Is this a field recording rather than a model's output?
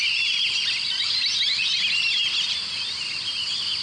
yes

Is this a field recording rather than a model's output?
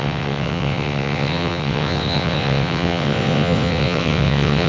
no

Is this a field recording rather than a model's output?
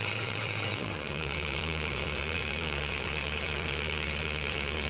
no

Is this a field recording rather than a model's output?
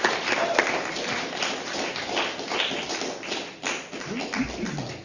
yes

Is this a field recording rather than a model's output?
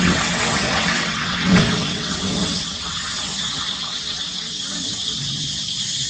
no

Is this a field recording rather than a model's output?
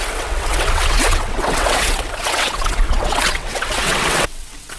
no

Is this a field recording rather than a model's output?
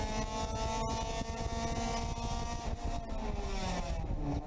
yes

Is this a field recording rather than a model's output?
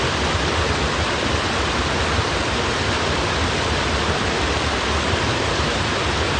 yes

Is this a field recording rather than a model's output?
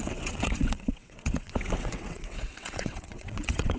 no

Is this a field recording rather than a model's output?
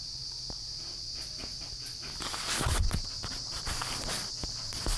yes